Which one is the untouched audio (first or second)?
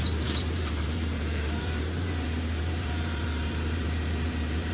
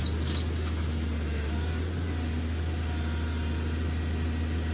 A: second